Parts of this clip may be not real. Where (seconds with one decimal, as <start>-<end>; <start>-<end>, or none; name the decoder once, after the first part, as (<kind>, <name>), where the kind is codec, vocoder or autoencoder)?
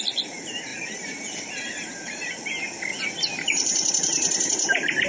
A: 0.7-2.3 (vocoder, BigVGAN v2); 3.3-3.9